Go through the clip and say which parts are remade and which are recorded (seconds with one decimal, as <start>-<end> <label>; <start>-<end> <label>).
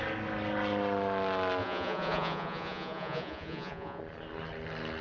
0.0-1.6 recorded; 1.6-4.0 remade; 4.0-5.0 recorded